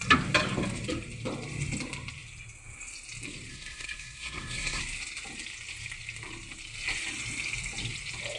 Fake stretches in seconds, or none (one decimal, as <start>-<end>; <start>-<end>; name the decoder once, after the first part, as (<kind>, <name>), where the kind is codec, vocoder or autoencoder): 3.5-4.8 (codec, SNAC)

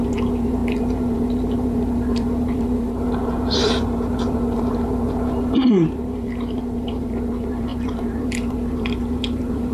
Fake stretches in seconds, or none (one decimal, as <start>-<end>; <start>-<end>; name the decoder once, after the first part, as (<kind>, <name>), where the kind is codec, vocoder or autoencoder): 0.0-9.7 (vocoder, BigVGAN v2)